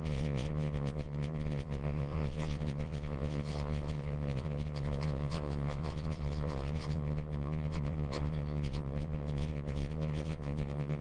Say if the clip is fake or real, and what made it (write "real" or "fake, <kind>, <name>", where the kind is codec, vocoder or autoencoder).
fake, vocoder, Vocos